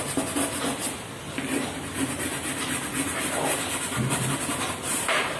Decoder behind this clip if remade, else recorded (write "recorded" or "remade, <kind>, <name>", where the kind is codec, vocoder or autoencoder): recorded